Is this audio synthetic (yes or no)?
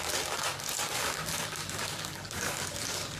yes